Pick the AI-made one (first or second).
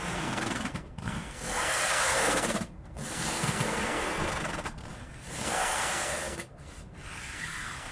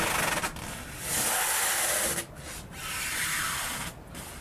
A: first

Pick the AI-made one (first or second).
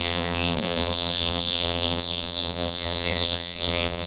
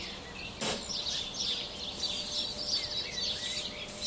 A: first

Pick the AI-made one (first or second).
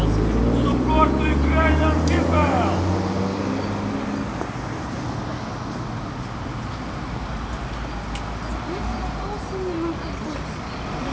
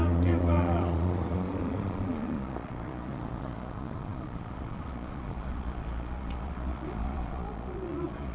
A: second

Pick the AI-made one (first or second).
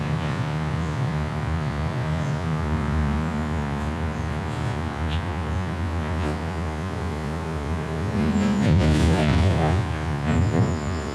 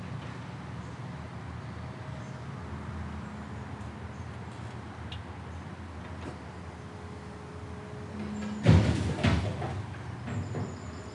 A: first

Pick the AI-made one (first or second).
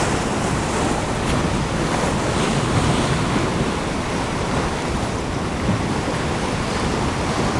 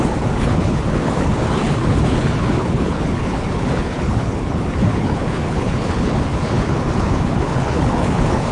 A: second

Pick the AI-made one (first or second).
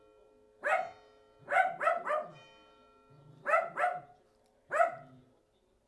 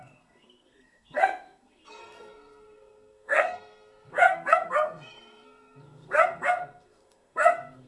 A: second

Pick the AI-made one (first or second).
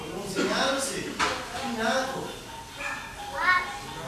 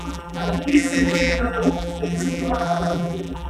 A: second